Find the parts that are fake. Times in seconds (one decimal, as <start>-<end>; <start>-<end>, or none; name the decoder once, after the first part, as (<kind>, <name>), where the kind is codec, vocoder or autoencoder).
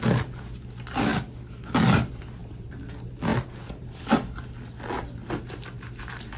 2.4-2.9 (vocoder, BigVGAN v2)